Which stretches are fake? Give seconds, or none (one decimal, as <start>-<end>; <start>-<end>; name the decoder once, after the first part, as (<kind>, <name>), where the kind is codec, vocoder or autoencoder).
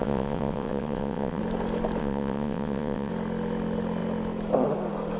0.0-1.4 (vocoder, WaveNeXt); 2.0-3.1